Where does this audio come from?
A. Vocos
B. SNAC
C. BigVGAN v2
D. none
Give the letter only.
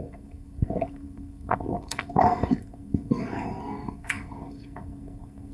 B